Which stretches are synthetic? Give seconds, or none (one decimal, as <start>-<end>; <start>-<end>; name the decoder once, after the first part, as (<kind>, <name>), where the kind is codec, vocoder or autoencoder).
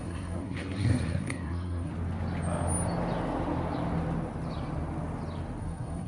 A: 0.0-1.9 (codec, SNAC); 5.6-6.1